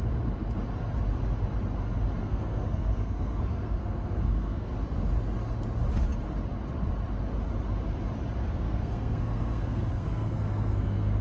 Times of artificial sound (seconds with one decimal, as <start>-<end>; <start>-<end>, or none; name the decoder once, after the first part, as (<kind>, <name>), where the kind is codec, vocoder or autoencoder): 2.2-4.7 (codec, SNAC); 8.4-11.2